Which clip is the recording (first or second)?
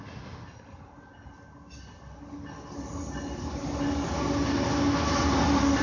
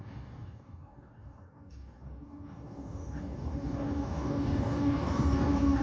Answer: first